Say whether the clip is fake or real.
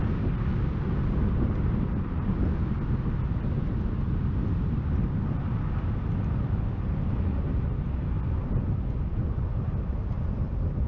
real